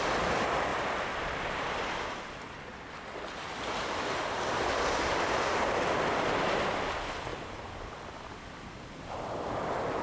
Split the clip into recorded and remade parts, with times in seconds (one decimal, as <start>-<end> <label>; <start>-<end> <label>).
0.0-0.7 recorded; 0.7-1.9 remade; 1.9-2.7 recorded; 2.7-5.6 remade; 5.6-10.0 recorded